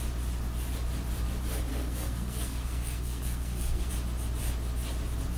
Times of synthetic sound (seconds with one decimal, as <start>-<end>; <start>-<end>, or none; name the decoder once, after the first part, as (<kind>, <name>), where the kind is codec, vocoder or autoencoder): 1.7-3.9 (codec, SNAC)